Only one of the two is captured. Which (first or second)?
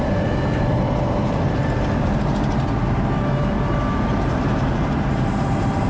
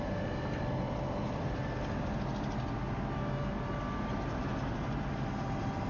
second